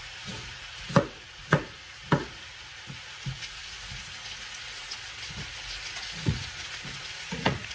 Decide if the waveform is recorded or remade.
remade